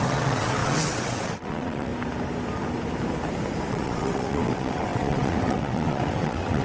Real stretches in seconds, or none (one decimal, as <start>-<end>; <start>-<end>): 1.9-3.7